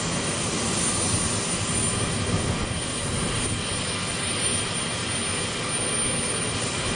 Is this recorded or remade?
recorded